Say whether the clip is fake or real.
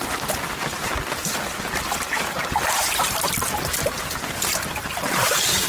real